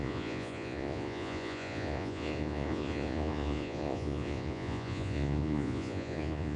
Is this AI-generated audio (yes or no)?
yes